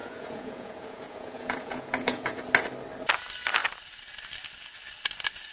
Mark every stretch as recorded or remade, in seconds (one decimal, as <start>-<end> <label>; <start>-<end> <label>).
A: 0.0-2.4 remade; 2.4-5.5 recorded